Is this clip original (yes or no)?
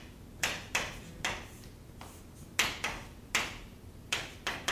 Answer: yes